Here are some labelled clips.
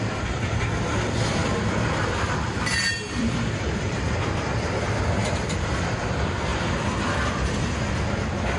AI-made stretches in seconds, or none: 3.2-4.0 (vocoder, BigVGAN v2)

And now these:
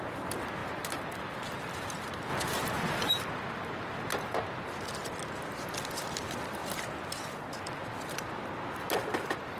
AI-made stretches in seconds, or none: 0.6-1.3 (vocoder, BigVGAN v2); 2.3-3.1

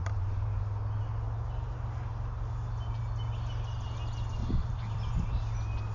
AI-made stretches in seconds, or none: 0.0-0.6 (vocoder, BigVGAN v2); 4.4-5.4